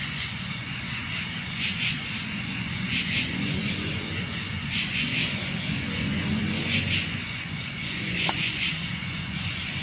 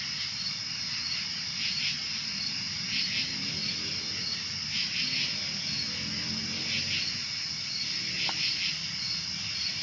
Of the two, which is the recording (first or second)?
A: second